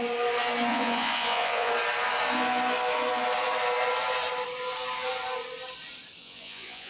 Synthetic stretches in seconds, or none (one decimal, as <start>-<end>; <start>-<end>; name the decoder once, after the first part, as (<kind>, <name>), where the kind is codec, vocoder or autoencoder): 0.7-1.7 (vocoder, Vocos); 6.2-6.9